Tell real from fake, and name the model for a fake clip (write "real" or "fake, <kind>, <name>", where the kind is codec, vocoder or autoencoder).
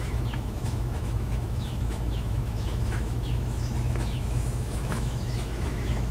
fake, autoencoder, DAC-VAE